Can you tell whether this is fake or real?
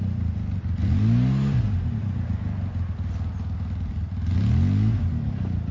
real